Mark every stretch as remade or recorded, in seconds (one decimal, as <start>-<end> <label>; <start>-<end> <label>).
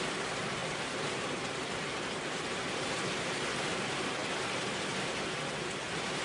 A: 0.0-6.2 recorded